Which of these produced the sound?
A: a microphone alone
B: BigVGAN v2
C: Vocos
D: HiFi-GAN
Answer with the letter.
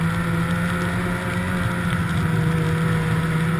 A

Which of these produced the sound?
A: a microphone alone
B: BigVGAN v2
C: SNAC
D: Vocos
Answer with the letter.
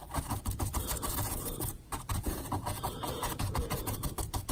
D